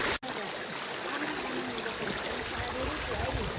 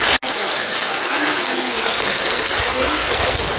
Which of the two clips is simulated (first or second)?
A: second